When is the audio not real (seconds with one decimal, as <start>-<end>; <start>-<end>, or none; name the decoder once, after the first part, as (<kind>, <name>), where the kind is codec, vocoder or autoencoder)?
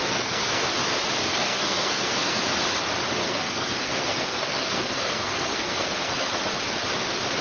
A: 0.0-0.7 (codec, SNAC); 1.2-2.4; 3.2-6.4